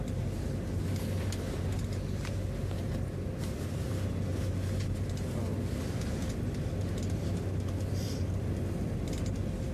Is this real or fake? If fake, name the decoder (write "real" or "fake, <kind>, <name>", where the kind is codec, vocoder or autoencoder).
real